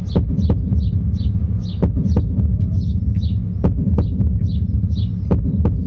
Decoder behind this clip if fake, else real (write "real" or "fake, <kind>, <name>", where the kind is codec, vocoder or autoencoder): real